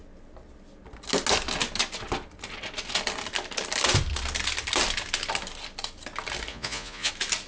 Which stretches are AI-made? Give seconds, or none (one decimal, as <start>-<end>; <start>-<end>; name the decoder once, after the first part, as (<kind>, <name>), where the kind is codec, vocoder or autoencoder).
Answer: 6.5-7.1 (vocoder, Vocos)